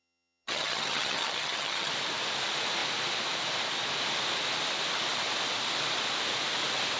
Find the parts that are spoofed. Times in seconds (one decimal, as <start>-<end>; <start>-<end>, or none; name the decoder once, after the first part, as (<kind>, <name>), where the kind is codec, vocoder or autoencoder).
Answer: 0.0-1.9 (vocoder, HiFi-GAN)